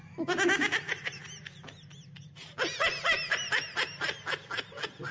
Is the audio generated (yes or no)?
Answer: no